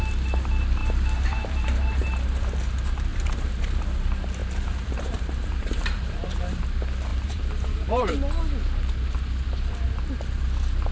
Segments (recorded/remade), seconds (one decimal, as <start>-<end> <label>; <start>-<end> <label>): 0.0-0.8 recorded; 0.8-2.0 remade; 2.0-3.1 recorded; 3.1-3.8 remade; 3.8-4.4 recorded; 4.4-6.6 remade; 6.6-7.1 recorded; 7.1-8.1 remade; 8.1-10.9 recorded